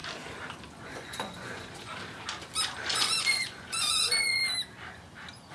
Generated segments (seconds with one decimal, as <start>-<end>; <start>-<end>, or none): 0.7-1.9; 2.9-4.4